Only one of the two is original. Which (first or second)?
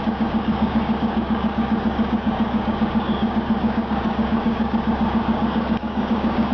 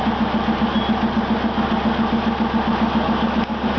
second